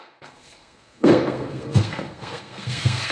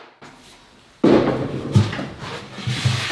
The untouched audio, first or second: second